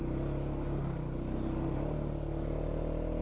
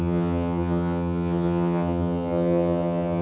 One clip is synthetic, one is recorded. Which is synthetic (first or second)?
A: second